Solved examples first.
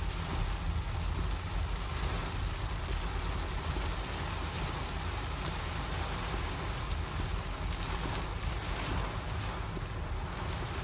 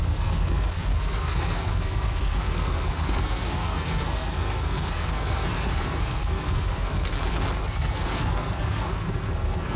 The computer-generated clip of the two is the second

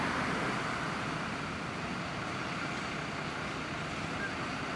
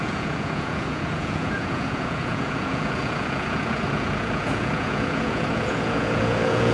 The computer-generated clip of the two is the second